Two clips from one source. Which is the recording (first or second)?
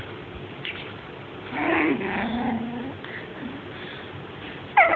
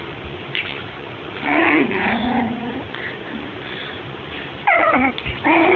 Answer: first